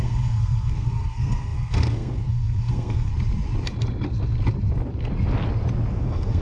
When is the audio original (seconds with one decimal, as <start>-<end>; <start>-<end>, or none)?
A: 3.1-5.9